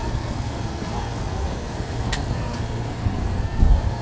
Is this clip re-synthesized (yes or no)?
yes